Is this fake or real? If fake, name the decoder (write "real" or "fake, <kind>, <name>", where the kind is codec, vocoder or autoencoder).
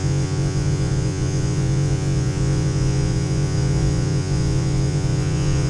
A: fake, vocoder, Vocos